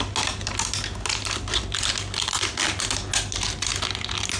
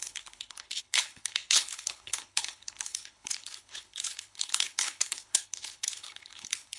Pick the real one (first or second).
first